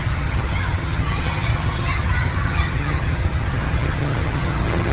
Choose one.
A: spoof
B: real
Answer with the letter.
A